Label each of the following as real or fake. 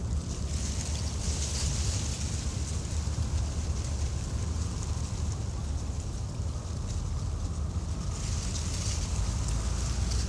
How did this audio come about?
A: real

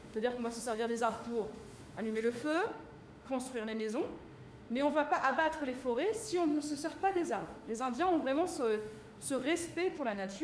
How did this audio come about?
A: fake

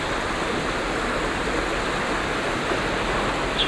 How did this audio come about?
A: real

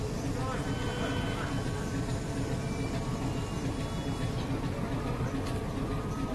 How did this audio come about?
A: real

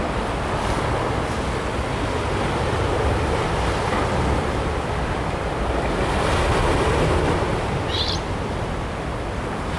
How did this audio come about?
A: real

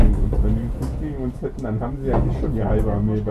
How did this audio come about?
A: real